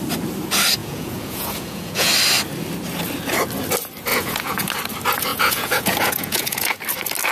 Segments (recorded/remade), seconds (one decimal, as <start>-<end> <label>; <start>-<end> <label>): 0.0-0.8 recorded; 0.8-2.1 remade; 2.1-4.1 recorded; 4.1-4.7 remade; 4.7-5.3 recorded; 5.3-6.8 remade; 6.8-7.3 recorded

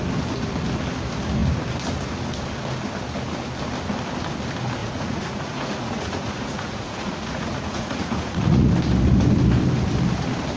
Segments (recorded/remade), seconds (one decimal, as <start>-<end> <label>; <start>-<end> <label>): 0.0-4.8 recorded; 4.8-8.7 remade; 8.7-10.6 recorded

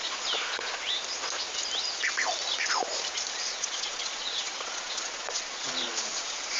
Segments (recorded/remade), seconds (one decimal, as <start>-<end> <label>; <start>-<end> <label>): 0.0-0.8 remade; 0.8-3.3 recorded; 3.3-6.6 remade

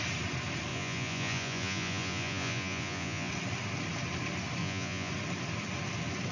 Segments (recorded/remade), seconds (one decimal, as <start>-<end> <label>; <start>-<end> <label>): 0.0-0.7 recorded; 0.7-3.3 remade; 3.3-4.6 recorded; 4.6-5.1 remade; 5.1-6.3 recorded